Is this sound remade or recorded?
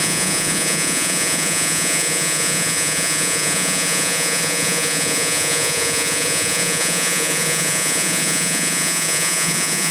remade